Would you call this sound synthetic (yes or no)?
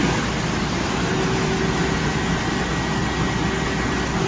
no